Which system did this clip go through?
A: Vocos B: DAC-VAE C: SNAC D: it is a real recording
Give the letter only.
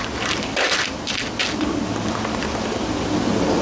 D